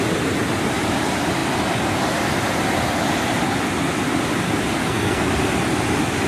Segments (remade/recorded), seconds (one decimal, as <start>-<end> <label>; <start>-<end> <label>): 0.0-4.8 recorded; 4.8-5.3 remade; 5.3-6.3 recorded